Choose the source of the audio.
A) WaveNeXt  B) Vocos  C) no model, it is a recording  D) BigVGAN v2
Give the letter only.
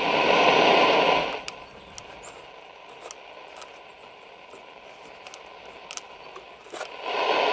C